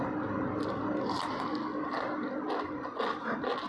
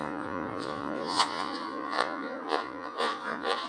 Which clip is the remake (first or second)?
second